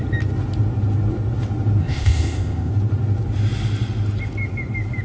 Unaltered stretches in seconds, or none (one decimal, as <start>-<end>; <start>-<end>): 0.0-1.8; 2.7-5.0